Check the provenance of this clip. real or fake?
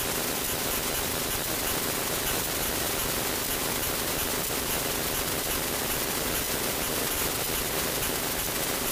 real